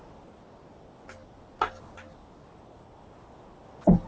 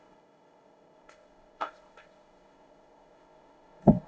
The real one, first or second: first